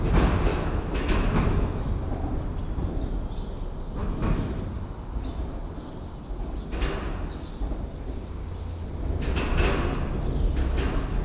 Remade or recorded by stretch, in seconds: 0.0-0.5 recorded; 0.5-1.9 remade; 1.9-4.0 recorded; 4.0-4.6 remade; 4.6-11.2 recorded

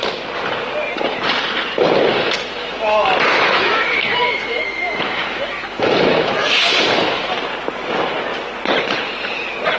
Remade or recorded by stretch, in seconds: 0.0-2.1 recorded; 2.1-7.3 remade; 7.3-9.8 recorded

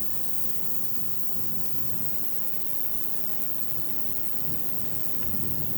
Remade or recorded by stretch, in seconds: 0.0-1.9 remade; 1.9-5.8 recorded